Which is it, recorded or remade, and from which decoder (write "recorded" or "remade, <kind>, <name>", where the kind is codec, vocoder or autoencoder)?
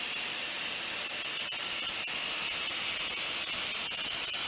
recorded